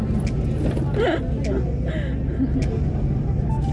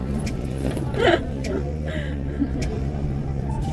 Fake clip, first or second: second